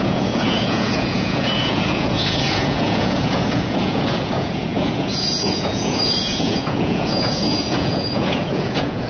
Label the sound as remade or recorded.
remade